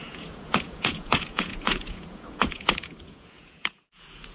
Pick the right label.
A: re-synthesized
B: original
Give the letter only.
A